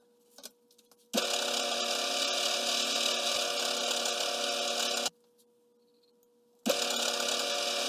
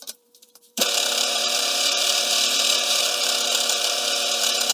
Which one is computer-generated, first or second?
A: second